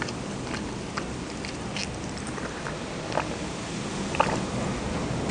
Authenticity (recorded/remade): recorded